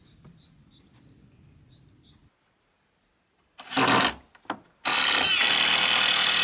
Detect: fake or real real